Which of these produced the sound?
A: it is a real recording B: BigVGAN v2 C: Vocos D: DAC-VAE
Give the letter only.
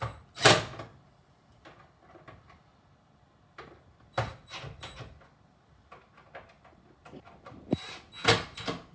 A